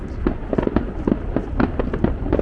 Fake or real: fake